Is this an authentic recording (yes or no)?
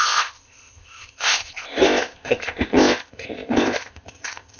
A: no